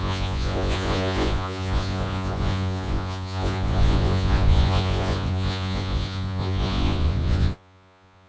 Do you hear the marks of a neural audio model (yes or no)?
yes